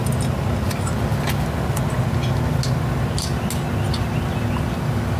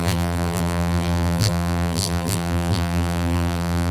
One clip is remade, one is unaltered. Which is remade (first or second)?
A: second